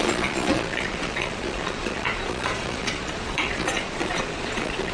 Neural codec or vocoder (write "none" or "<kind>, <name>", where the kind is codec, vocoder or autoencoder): vocoder, Vocos